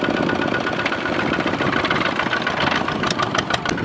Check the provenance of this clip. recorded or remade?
remade